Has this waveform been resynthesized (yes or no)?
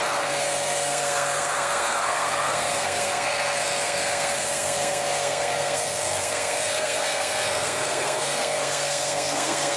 yes